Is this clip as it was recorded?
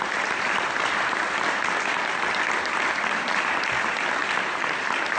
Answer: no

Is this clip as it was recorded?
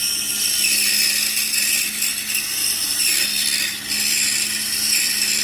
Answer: yes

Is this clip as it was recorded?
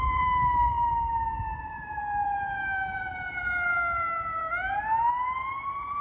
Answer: no